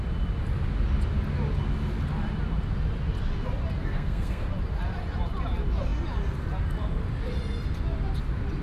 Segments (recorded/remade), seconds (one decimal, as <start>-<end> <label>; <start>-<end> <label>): 0.0-3.8 recorded; 3.8-4.5 remade; 4.5-8.6 recorded